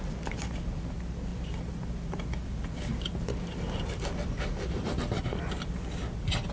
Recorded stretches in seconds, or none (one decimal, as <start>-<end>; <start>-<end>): none